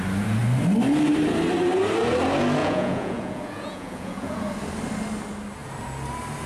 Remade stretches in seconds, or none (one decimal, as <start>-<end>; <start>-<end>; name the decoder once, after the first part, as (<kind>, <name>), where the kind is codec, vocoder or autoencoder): 2.6-4.4 (vocoder, Vocos)